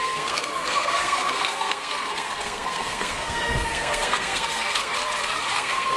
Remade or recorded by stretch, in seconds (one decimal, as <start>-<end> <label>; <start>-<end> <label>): 0.0-4.9 remade; 4.9-5.4 recorded; 5.4-6.0 remade